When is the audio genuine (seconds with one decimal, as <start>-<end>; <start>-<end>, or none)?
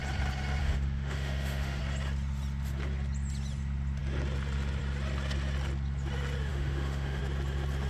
0.0-0.6; 1.8-6.5; 7.2-7.9